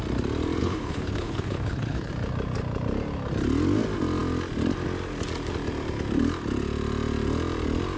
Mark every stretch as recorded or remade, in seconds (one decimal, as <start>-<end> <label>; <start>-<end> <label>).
0.0-0.6 recorded; 0.6-2.1 remade; 2.1-8.0 recorded